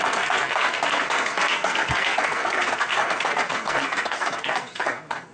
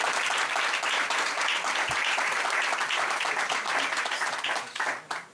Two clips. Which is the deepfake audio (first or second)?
first